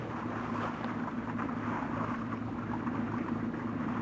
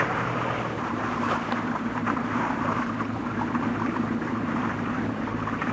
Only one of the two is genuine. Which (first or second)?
first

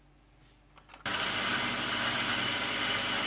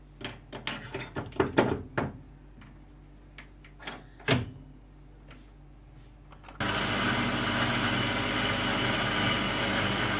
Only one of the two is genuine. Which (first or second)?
second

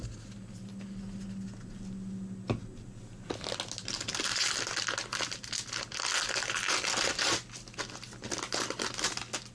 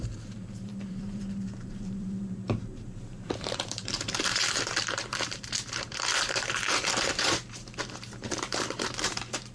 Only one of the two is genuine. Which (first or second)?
first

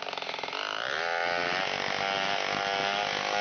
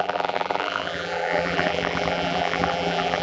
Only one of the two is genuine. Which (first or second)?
first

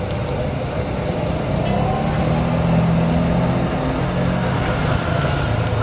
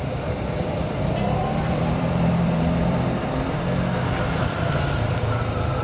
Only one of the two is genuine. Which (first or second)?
first